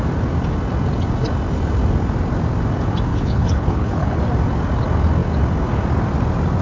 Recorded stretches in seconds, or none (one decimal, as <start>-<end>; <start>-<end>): 0.0-3.1; 4.2-6.6